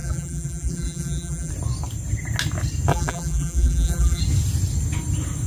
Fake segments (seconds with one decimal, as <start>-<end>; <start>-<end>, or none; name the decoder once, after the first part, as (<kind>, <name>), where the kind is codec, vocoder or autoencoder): 0.0-1.5 (vocoder, BigVGAN v2); 2.9-4.2